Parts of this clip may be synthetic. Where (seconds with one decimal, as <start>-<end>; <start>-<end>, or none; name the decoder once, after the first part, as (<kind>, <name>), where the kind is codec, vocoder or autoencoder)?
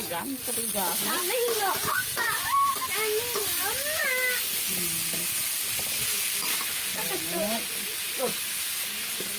none